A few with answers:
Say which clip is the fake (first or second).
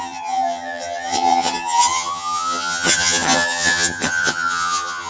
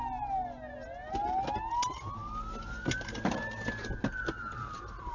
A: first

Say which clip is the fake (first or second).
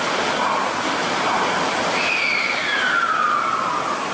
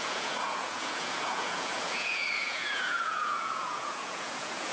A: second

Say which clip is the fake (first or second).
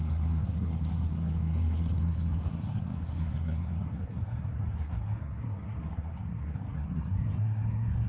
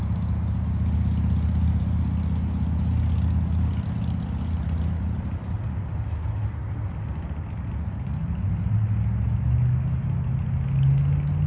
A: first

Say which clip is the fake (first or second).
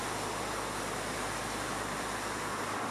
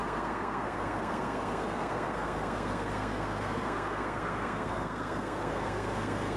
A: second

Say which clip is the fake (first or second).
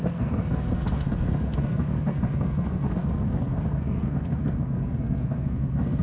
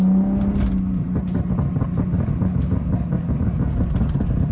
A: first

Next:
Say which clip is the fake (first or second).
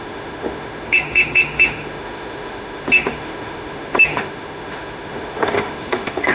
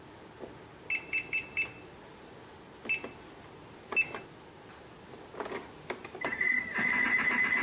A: first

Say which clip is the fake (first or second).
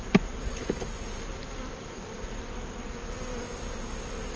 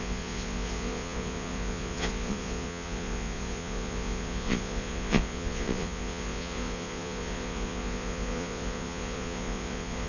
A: second